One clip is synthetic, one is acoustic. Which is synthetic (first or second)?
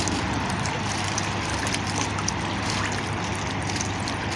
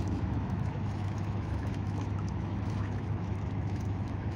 second